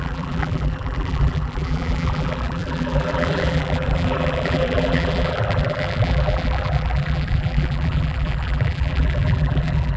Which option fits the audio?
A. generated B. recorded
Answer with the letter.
A